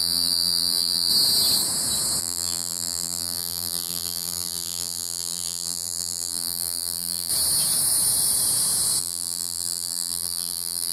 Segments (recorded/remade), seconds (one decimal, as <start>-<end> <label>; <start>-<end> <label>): 0.0-1.1 remade; 1.1-2.2 recorded; 2.2-7.3 remade; 7.3-9.0 recorded; 9.0-10.9 remade